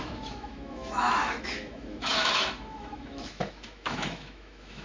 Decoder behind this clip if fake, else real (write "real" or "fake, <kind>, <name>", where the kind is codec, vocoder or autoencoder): fake, autoencoder, DAC-VAE